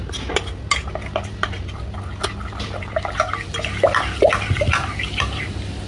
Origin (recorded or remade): recorded